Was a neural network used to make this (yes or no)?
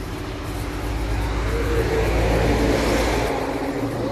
no